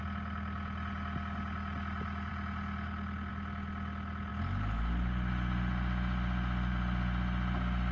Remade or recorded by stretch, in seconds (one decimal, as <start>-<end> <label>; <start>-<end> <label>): 0.0-7.9 recorded